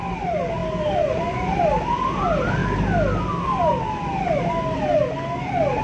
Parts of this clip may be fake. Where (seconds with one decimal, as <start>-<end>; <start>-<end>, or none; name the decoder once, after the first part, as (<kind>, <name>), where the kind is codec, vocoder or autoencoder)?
none